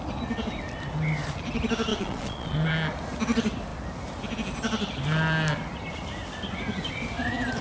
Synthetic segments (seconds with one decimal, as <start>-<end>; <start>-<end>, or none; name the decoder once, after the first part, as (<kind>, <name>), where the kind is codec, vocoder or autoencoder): 1.9-2.7 (vocoder, Vocos)